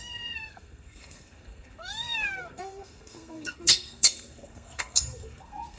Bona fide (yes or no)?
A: no